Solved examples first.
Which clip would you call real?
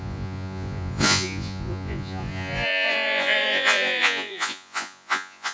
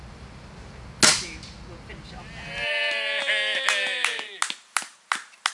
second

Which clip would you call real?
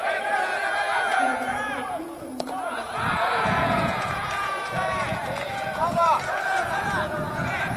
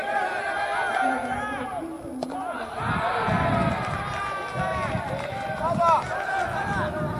second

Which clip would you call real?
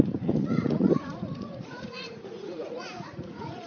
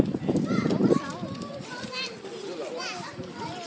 second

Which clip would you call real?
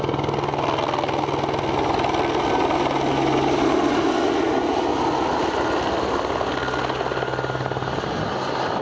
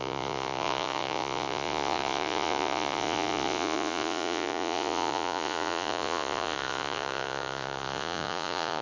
first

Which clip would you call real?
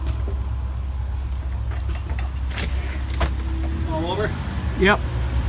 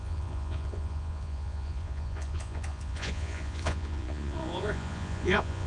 first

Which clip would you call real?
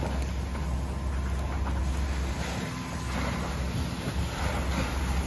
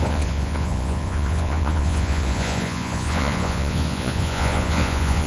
first